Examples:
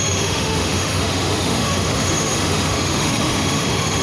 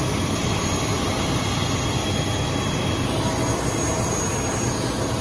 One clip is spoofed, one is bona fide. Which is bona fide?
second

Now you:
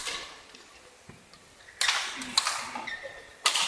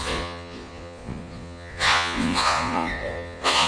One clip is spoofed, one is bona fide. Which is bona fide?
first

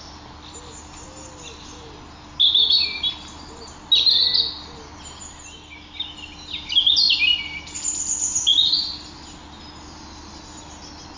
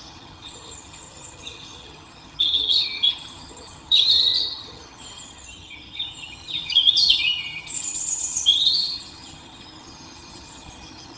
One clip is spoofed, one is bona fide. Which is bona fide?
first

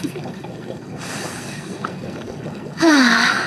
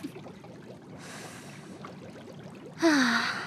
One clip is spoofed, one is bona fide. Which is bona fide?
second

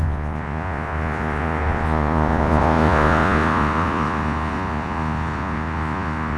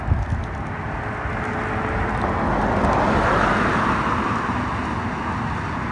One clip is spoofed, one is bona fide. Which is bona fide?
second